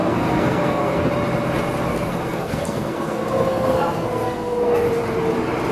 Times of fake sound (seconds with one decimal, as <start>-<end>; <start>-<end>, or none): 0.0-1.1; 1.9-4.9